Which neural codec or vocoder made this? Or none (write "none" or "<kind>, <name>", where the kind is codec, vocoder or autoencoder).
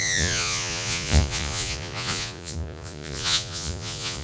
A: vocoder, Vocos